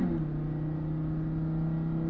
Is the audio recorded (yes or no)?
yes